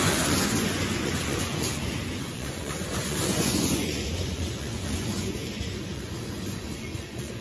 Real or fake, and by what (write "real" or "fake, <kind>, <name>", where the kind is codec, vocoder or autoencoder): fake, vocoder, Vocos